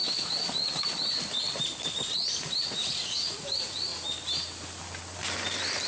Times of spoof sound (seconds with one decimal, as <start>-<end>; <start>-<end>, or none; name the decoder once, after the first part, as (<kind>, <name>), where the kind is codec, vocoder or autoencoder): 2.6-3.9 (vocoder, Vocos)